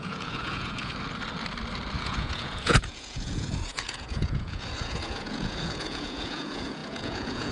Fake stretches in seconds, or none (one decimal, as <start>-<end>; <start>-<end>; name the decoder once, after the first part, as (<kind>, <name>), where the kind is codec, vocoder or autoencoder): 0.0-0.9 (vocoder, Vocos); 2.0-7.5